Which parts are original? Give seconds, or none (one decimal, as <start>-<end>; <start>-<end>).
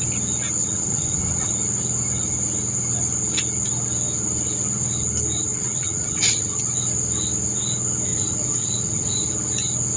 0.0-0.6; 1.5-5.5; 6.6-8.1; 9.3-10.0